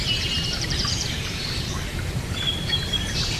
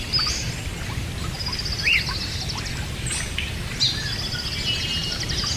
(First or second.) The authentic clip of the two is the second